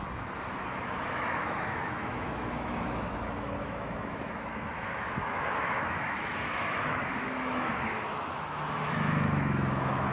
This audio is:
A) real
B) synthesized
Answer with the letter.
B